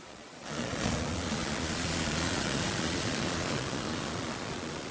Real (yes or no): no